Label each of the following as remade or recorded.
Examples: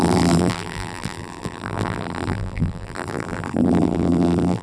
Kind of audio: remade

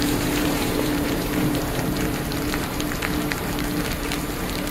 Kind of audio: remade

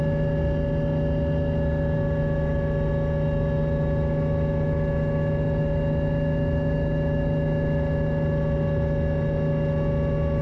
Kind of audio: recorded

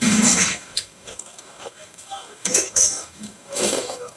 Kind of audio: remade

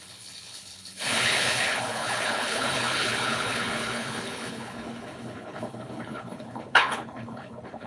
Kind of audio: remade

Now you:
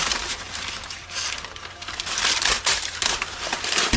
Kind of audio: remade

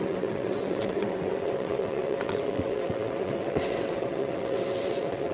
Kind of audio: remade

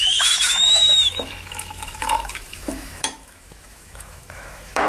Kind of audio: remade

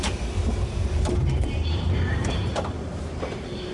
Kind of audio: remade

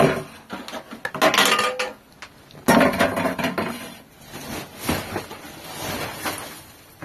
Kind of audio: recorded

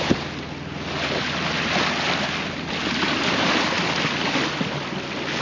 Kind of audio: recorded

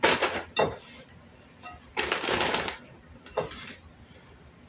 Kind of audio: recorded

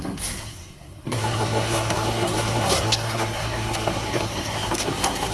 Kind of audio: remade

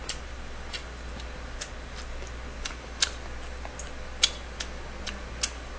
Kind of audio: recorded